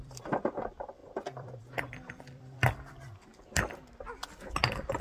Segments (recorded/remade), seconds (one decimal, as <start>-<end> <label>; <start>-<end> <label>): 0.0-3.3 remade; 3.3-5.0 recorded